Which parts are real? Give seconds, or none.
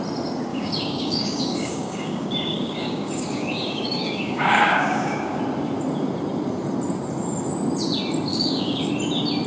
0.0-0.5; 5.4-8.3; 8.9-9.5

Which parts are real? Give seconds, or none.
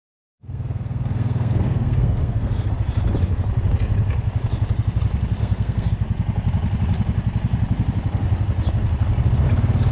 2.7-5.4; 5.9-9.9